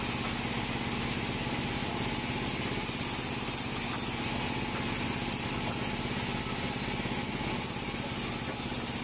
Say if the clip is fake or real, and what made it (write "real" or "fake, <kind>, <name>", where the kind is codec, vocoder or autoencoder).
real